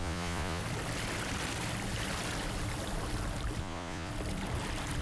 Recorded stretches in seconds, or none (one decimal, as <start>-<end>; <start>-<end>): 0.6-3.6; 4.1-5.0